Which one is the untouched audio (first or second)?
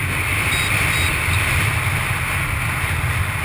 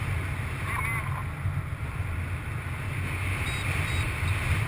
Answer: second